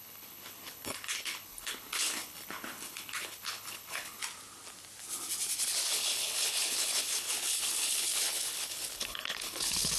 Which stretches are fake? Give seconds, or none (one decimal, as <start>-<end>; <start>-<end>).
0.0-4.2; 5.9-10.0